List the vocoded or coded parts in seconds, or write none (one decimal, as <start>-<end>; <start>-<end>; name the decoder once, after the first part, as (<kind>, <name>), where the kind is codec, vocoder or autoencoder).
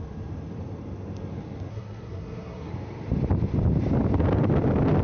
1.7-2.7 (codec, SNAC)